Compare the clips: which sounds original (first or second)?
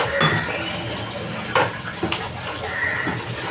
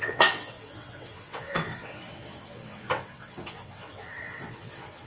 first